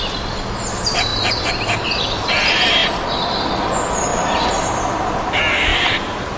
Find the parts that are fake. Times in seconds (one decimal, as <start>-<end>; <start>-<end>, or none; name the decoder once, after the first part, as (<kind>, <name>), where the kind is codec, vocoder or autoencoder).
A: 4.1-4.7 (vocoder, BigVGAN v2); 5.7-6.4